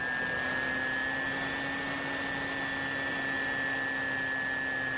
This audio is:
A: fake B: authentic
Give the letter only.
B